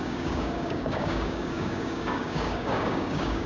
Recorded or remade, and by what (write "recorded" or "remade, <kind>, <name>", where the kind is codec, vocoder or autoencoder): remade, codec, DAC